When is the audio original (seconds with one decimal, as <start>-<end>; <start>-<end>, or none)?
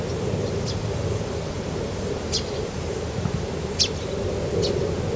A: 0.0-0.4; 3.5-5.2